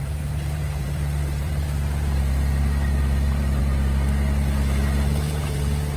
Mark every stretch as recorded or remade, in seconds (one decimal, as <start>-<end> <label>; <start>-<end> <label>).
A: 0.0-3.6 remade; 3.6-6.0 recorded